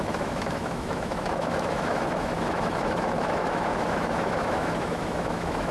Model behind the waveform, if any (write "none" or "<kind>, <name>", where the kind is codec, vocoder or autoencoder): autoencoder, DAC-VAE